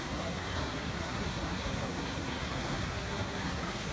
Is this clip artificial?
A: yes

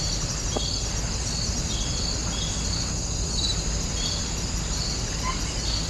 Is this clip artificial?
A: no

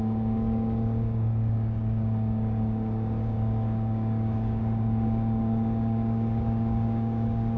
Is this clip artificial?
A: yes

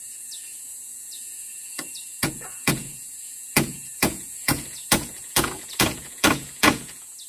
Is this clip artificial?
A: yes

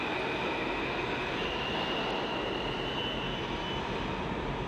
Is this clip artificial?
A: no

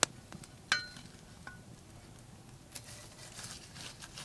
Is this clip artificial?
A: no